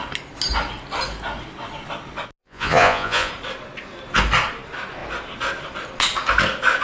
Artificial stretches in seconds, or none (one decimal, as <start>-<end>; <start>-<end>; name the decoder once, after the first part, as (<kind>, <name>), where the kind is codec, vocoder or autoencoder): 2.4-3.3 (vocoder, Vocos)